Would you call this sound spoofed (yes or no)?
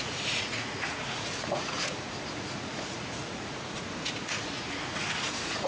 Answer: yes